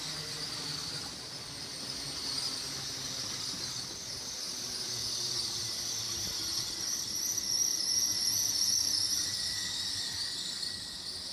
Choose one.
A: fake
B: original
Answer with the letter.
B